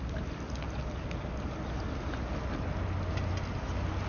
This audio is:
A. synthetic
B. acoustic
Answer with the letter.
B